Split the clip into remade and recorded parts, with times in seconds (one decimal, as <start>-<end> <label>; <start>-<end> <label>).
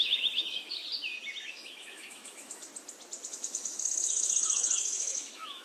0.0-0.8 remade; 0.8-1.5 recorded; 1.5-2.7 remade; 2.7-3.3 recorded; 3.3-5.6 remade